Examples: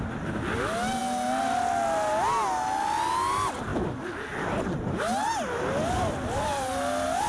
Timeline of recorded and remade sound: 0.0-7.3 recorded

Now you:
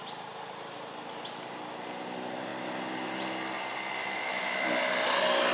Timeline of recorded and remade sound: 0.0-4.0 recorded; 4.0-4.7 remade; 4.7-5.5 recorded

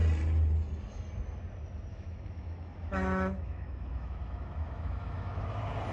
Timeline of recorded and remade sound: 0.0-1.9 recorded; 1.9-5.4 remade; 5.4-5.9 recorded

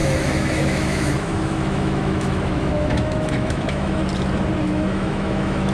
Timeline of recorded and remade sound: 0.0-4.0 remade; 4.0-4.6 recorded; 4.6-5.7 remade

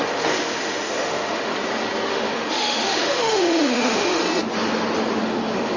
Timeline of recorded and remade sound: 0.0-1.5 remade; 1.5-2.1 recorded; 2.1-4.2 remade; 4.2-5.2 recorded; 5.2-5.8 remade

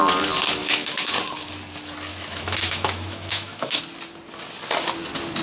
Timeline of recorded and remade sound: 0.0-0.6 recorded; 0.6-1.1 remade; 1.1-2.1 recorded; 2.1-3.8 remade; 3.8-5.4 recorded